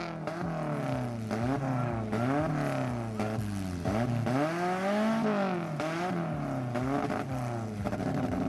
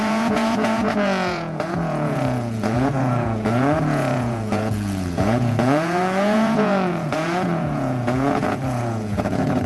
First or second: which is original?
first